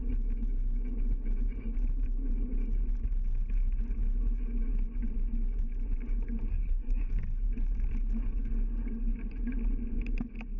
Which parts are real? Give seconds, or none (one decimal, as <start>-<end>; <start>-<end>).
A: 0.0-6.5; 7.1-10.6